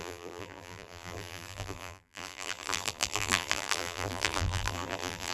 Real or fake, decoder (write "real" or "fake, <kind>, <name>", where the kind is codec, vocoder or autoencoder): fake, vocoder, BigVGAN v2